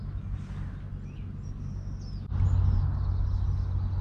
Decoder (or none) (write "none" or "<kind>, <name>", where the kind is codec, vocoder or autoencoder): none